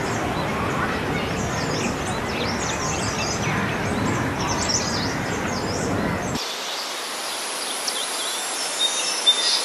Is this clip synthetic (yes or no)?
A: no